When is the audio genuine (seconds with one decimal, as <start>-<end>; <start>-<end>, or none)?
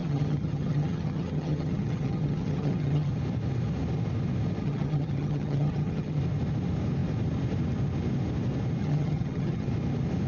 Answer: 3.1-4.6; 6.2-8.8; 9.7-10.3